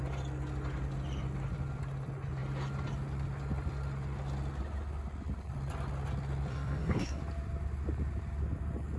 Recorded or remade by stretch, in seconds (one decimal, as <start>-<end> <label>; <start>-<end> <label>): 0.0-6.5 recorded; 6.5-7.2 remade; 7.2-9.0 recorded